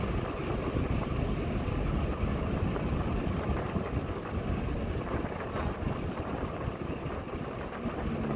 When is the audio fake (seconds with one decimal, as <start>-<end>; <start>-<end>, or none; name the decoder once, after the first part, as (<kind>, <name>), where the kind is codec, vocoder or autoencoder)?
0.4-1.1 (vocoder, BigVGAN v2)